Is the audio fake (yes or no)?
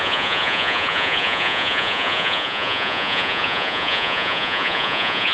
yes